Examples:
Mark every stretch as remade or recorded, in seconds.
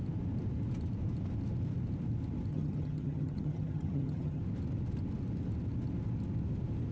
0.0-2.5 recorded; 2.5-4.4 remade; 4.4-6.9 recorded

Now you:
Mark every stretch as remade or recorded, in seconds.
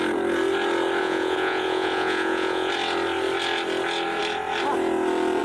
0.0-1.0 recorded; 1.0-2.7 remade; 2.7-5.4 recorded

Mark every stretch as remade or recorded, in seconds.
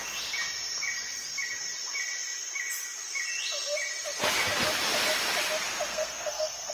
0.0-5.9 recorded; 5.9-6.7 remade